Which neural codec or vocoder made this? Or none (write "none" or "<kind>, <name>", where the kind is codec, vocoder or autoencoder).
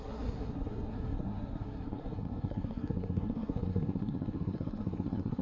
codec, SNAC